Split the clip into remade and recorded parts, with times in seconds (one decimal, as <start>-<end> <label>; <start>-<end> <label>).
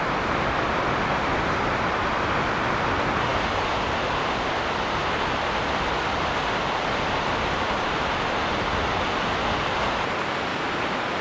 0.0-11.2 recorded